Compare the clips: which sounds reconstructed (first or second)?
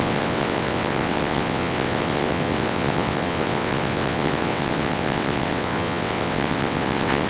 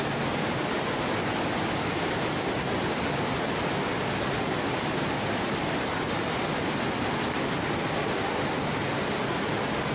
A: first